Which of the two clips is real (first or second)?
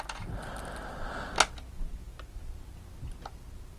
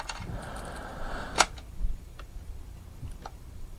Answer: first